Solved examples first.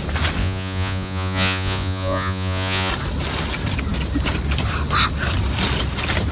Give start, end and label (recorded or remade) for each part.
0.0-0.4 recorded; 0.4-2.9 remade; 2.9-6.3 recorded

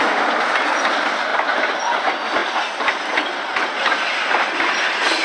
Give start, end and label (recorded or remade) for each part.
0.0-5.2 recorded

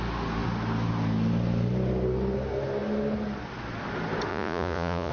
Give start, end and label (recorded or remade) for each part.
0.0-4.3 recorded; 4.3-5.1 remade